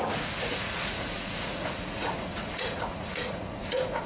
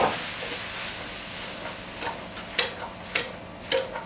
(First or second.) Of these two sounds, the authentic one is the second